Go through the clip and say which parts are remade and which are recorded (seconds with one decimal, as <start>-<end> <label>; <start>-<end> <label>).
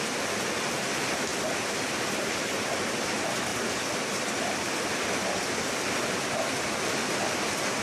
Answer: 0.0-3.5 recorded; 3.5-6.1 remade; 6.1-7.8 recorded